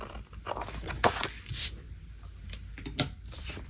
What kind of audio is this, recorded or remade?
recorded